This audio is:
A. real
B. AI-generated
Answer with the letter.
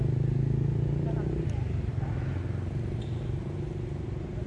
A